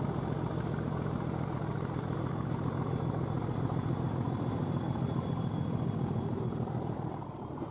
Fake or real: fake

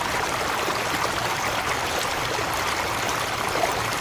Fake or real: real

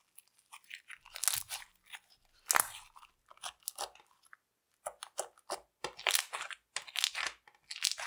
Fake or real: real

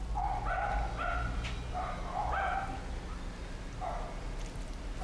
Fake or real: real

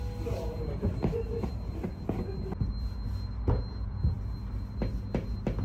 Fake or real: real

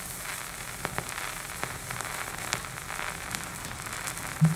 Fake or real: real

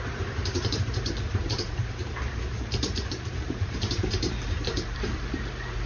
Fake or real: fake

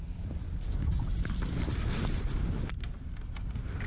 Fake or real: fake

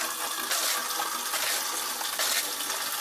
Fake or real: real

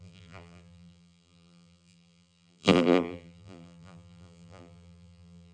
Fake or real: fake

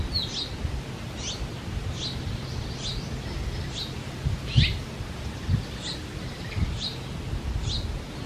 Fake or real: real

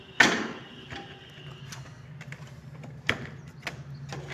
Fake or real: real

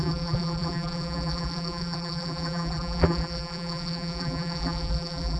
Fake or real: fake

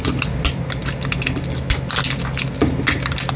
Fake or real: real